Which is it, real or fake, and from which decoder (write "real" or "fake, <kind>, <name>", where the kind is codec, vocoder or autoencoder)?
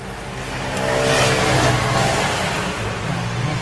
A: real